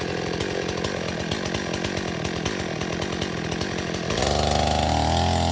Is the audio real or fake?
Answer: real